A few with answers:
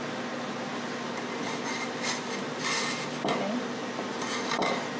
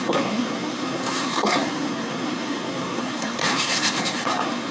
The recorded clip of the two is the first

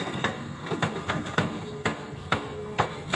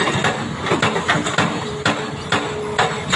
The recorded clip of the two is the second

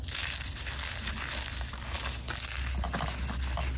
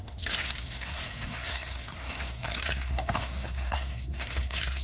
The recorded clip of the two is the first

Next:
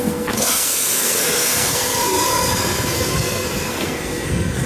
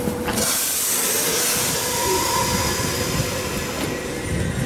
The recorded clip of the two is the second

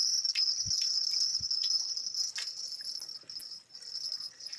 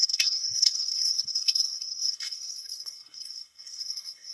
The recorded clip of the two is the first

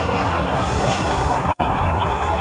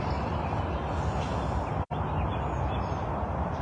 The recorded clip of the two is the second